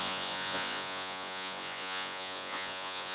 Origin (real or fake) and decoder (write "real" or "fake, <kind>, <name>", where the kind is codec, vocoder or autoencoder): fake, vocoder, Vocos